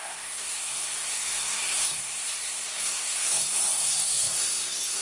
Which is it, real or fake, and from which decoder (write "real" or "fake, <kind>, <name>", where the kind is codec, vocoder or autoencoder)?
fake, codec, SNAC